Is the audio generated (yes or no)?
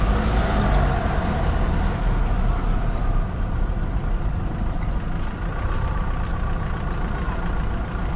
no